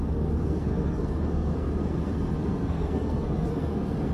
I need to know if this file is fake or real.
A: fake